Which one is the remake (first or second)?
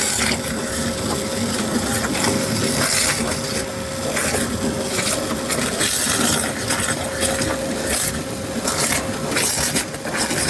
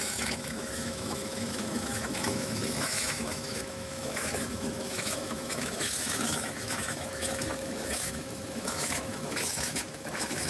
second